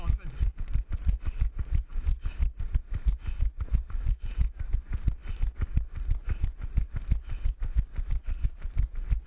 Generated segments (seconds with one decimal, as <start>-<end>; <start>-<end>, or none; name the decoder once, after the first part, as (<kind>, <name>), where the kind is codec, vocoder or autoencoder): none